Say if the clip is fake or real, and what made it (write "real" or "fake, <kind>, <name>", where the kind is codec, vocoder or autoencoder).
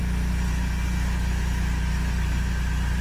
real